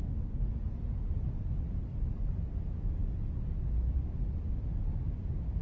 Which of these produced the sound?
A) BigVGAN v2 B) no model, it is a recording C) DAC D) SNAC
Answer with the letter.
B